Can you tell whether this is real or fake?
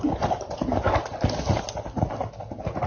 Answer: real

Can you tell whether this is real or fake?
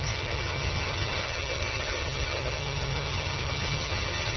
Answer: fake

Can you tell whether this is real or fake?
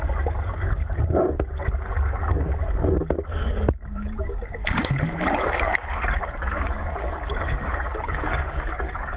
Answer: fake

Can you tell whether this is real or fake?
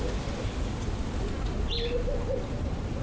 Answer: real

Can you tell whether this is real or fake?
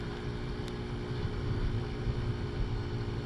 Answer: real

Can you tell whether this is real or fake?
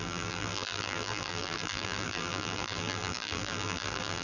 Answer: fake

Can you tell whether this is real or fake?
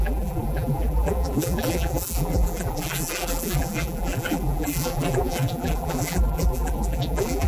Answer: fake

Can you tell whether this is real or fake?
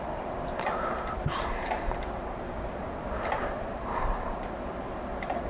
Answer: fake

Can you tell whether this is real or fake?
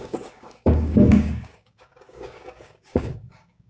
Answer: fake